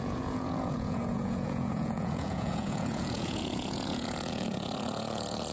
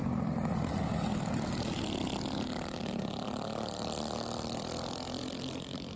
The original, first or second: second